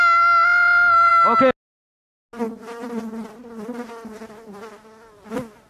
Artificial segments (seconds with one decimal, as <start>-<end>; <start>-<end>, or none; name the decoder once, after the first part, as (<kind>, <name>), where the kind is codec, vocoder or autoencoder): none